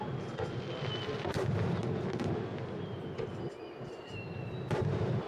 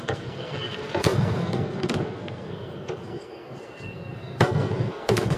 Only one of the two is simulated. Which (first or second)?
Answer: second